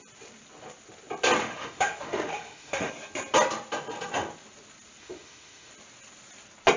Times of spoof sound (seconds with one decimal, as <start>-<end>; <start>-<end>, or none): 1.4-2.9; 5.0-5.7

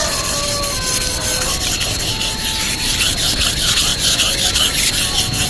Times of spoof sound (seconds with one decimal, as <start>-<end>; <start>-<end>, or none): 3.9-4.5

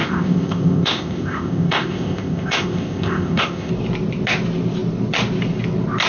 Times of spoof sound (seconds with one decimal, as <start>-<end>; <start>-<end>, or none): 0.0-3.7

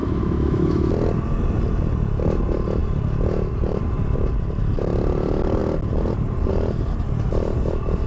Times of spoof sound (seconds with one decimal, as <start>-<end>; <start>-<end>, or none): 0.0-0.9

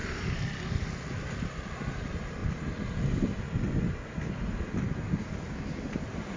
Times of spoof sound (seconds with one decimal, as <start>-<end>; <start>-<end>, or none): none

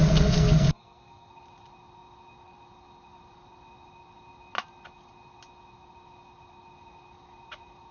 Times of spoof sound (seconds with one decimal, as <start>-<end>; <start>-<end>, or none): 0.0-1.3

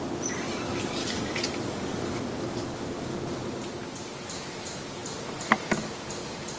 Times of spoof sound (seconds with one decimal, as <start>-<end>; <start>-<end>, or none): 1.0-3.2